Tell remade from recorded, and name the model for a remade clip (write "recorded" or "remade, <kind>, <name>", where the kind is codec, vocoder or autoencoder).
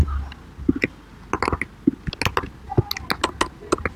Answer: recorded